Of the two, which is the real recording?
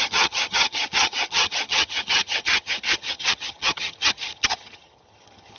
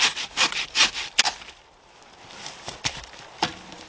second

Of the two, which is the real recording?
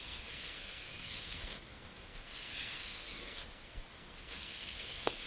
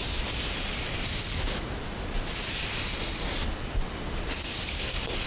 second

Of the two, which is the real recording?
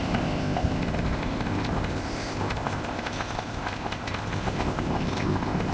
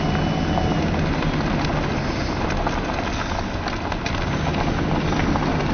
second